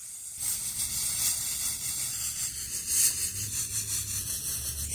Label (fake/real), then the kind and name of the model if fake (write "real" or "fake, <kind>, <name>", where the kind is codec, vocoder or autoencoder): real